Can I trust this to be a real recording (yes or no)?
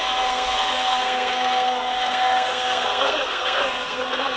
no